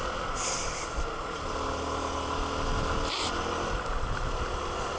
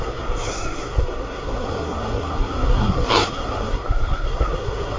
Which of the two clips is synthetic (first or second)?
second